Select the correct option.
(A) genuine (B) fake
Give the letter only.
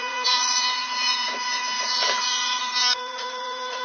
B